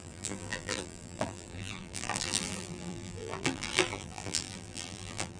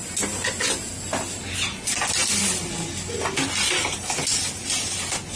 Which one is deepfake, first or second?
first